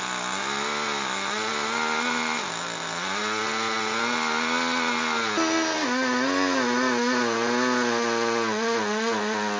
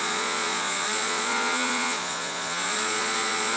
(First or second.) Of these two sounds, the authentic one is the first